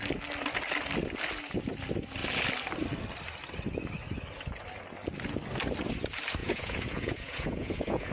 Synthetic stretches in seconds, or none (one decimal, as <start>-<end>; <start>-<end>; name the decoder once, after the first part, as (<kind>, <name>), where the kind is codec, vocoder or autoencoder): 6.4-8.1 (vocoder, Vocos)